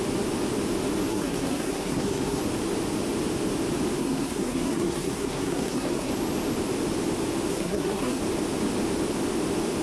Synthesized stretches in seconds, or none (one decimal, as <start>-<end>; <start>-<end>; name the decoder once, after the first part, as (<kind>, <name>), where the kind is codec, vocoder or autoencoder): 1.1-2.4 (codec, SNAC); 4.0-6.1; 7.5-8.2